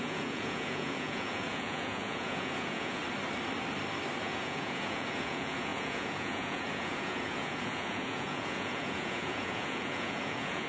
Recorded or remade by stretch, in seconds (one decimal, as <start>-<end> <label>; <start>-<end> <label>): 0.0-3.0 remade; 3.0-4.2 recorded; 4.2-10.7 remade